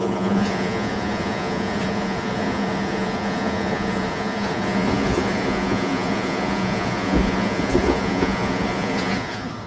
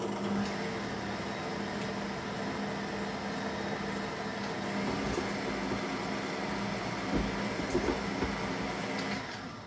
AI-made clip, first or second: first